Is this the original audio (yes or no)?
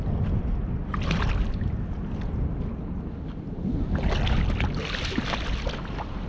yes